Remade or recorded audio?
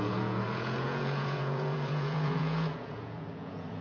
remade